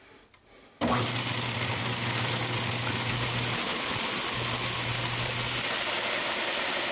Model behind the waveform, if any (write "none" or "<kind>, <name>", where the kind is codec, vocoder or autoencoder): none